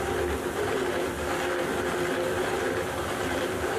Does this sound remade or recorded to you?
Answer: recorded